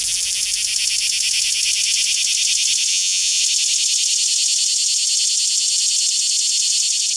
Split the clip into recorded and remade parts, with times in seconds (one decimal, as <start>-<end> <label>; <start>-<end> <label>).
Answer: 0.0-2.9 recorded; 2.9-3.4 remade; 3.4-7.2 recorded